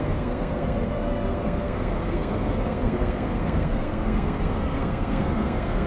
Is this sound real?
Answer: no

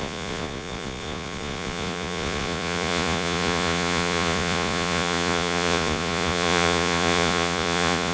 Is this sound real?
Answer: no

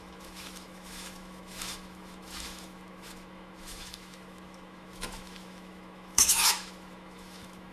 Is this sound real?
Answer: no